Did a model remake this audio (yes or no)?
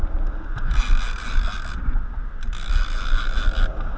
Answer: no